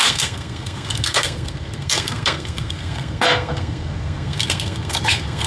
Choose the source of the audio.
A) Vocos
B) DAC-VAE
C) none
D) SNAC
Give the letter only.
D